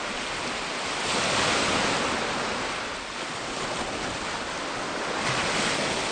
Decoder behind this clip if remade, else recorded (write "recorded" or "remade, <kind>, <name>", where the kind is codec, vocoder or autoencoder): recorded